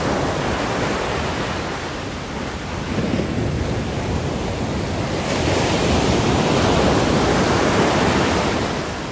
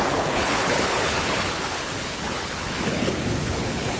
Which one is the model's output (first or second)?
second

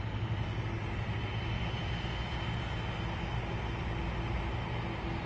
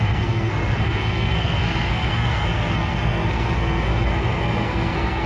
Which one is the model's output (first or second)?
second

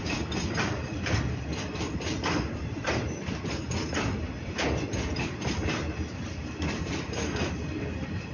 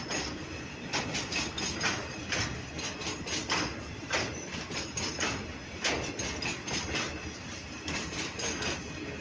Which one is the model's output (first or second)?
first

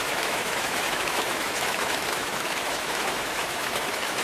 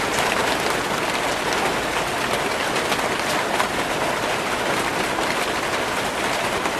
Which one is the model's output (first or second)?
first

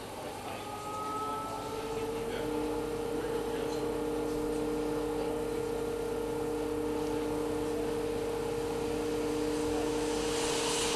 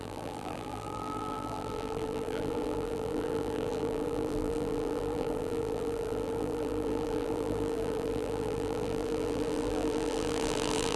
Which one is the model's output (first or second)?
second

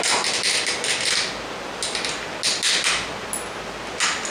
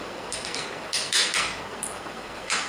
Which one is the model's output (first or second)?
second